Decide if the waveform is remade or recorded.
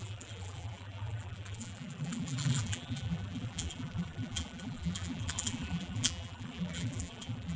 remade